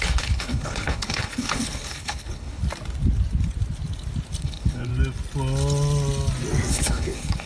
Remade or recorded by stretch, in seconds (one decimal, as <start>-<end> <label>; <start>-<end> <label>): 0.0-2.6 remade; 2.6-4.4 recorded; 4.4-4.9 remade; 4.9-6.7 recorded; 6.7-7.5 remade

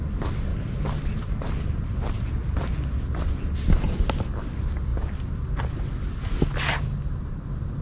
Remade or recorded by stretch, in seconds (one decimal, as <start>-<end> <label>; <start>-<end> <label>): 0.0-0.5 recorded; 0.5-2.3 remade; 2.3-7.8 recorded

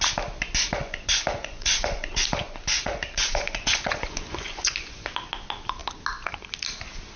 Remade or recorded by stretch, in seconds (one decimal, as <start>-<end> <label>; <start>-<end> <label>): 0.0-0.8 recorded; 0.8-5.1 remade; 5.1-7.2 recorded

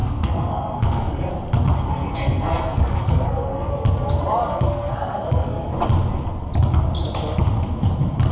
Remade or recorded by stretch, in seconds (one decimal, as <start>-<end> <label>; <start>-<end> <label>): 0.0-1.3 remade; 1.3-1.9 recorded; 1.9-3.7 remade; 3.7-4.5 recorded; 4.5-5.7 remade; 5.7-8.3 recorded

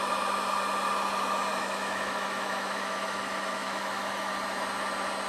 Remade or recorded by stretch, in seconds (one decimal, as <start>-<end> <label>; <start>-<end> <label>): 0.0-1.5 recorded; 1.5-4.3 remade; 4.3-5.3 recorded

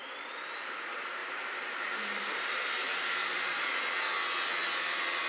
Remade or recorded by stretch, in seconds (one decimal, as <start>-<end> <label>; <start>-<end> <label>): 0.0-1.2 recorded; 1.2-3.7 remade; 3.7-5.3 recorded

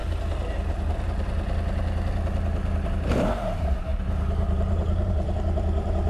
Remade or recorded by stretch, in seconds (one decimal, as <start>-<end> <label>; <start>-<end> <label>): 0.0-2.9 recorded; 2.9-6.1 remade